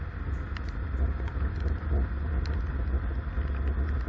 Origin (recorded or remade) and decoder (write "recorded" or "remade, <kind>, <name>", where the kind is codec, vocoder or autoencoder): recorded